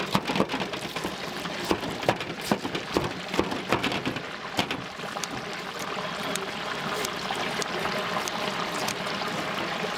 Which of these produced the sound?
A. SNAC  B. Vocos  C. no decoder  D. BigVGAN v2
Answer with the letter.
C